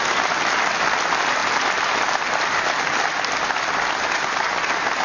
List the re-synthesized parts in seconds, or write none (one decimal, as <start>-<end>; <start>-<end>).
none